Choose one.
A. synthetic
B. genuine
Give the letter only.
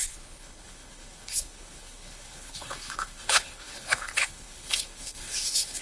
A